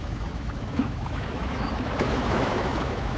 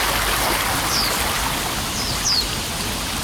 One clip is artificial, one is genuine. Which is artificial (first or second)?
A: first